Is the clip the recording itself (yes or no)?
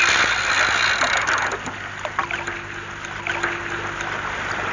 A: yes